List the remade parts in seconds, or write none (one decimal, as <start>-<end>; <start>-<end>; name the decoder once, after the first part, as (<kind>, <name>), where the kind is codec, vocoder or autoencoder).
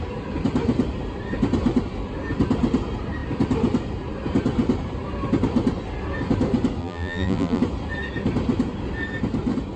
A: 6.8-7.6 (vocoder, BigVGAN v2)